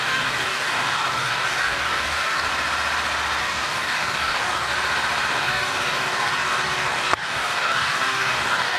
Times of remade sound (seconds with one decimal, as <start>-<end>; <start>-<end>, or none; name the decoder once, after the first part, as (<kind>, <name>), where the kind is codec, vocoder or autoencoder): 0.0-2.5 (codec, DAC); 3.4-4.7; 5.3-8.8